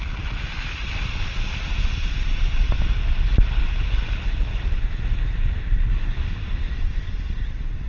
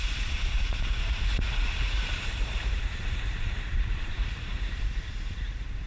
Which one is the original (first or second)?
first